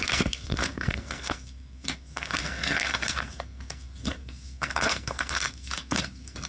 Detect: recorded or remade remade